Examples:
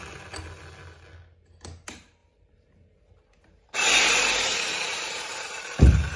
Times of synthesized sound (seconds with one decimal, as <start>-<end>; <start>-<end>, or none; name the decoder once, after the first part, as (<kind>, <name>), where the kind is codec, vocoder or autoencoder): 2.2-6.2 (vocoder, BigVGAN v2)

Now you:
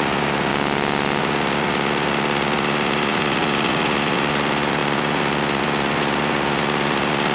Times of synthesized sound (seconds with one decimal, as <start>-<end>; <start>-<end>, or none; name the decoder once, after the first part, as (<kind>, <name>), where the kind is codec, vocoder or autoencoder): 0.0-0.5 (vocoder, Vocos); 1.2-7.3

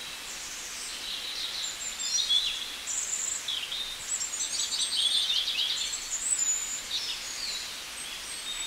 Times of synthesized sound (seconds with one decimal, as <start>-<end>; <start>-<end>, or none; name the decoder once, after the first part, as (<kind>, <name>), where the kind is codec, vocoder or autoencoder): none

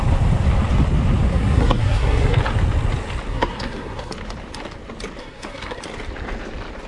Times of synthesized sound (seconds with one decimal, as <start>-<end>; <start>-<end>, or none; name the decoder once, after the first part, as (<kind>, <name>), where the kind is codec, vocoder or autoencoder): 1.3-2.4 (codec, SNAC); 3.3-4.1; 5.2-5.8

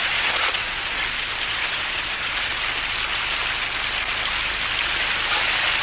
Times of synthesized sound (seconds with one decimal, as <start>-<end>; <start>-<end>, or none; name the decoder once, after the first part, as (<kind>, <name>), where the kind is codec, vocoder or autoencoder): 0.0-1.0 (vocoder, Vocos); 1.5-2.5

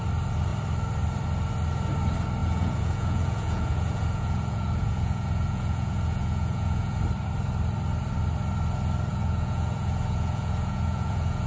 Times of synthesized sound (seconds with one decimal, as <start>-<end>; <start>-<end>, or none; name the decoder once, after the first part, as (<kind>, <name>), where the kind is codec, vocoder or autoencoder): 2.4-7.0 (vocoder, Vocos); 9.1-11.5

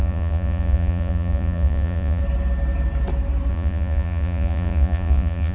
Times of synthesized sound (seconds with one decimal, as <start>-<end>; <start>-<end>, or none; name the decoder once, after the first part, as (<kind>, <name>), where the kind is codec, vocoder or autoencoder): 0.0-2.2 (vocoder, Vocos); 3.5-5.5

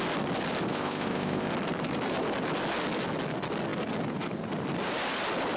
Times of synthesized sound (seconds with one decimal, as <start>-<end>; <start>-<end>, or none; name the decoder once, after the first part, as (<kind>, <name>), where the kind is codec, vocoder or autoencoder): 0.7-1.5 (codec, ZipCodec)